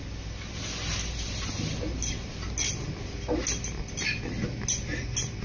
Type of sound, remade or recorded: recorded